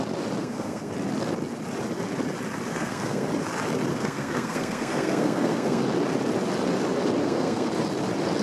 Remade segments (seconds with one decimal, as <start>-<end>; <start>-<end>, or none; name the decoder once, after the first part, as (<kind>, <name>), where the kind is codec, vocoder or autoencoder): 0.4-0.9 (codec, SNAC); 2.7-3.3; 3.9-5.8; 7.2-7.7